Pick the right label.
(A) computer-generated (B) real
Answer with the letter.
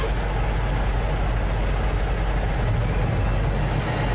B